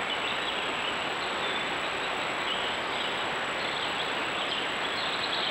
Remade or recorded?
remade